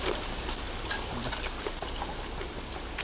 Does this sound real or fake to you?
real